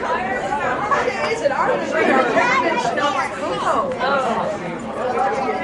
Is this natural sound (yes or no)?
no